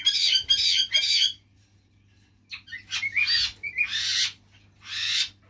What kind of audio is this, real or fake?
real